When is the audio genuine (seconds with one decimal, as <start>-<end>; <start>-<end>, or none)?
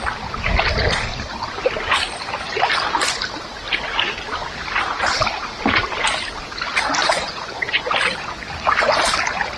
0.0-7.0; 7.9-9.6